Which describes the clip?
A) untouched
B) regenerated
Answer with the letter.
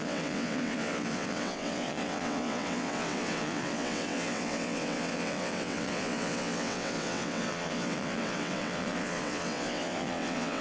B